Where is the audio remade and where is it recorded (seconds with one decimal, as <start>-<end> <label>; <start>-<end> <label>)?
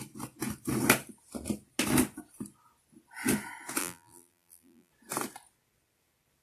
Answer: 0.0-3.8 recorded; 3.8-4.9 remade; 4.9-6.4 recorded